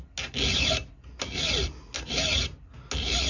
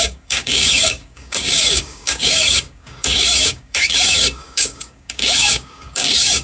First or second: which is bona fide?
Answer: first